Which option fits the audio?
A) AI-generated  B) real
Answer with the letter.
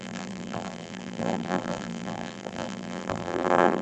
A